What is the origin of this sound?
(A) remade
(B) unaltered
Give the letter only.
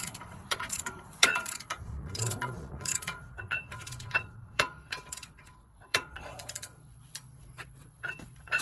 A